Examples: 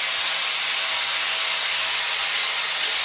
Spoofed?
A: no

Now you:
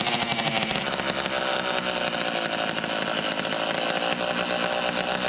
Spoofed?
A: no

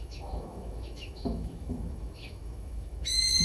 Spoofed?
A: yes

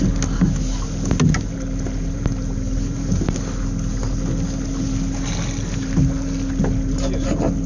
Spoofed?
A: no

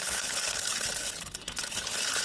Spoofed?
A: yes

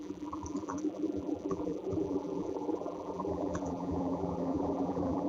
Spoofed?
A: yes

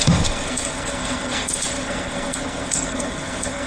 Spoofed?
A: yes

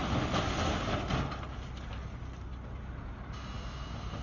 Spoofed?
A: no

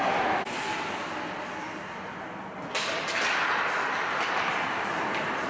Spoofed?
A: no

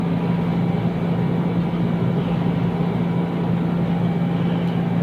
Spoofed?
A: no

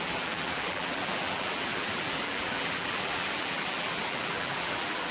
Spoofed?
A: yes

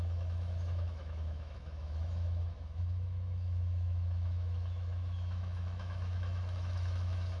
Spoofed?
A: yes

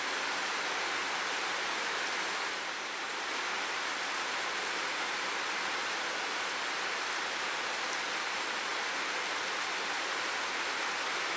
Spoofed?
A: no